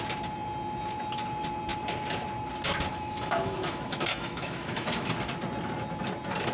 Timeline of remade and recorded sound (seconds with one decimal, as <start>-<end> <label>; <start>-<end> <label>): 0.0-2.9 recorded; 2.9-5.1 remade; 5.1-6.5 recorded